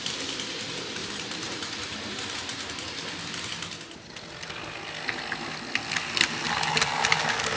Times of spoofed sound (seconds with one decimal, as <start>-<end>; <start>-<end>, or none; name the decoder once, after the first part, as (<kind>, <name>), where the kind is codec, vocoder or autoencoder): 1.0-2.7 (vocoder, BigVGAN v2)